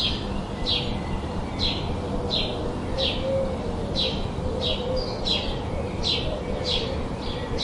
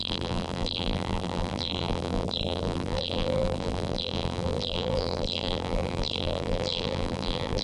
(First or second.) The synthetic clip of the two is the second